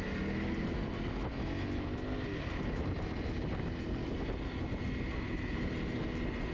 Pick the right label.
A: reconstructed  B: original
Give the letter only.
B